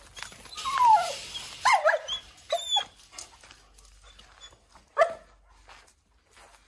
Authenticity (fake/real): real